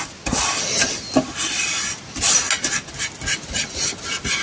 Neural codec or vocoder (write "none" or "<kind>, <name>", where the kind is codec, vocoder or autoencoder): none